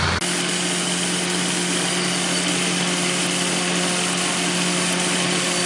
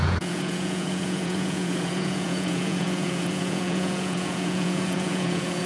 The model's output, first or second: second